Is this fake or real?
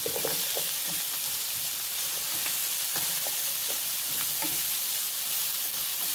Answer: real